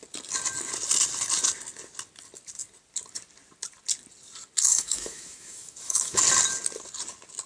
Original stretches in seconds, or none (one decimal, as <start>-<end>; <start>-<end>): 0.0-4.7; 6.2-7.5